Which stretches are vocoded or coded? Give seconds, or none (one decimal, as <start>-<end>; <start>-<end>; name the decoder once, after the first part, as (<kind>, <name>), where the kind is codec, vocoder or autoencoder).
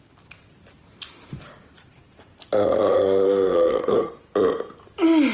2.9-4.1 (codec, SNAC)